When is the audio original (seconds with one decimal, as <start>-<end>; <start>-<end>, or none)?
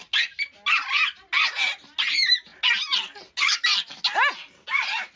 0.0-5.2